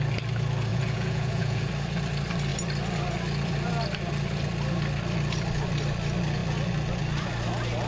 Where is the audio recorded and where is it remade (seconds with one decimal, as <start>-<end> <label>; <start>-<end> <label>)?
0.0-0.7 recorded; 0.7-1.7 remade; 1.7-7.9 recorded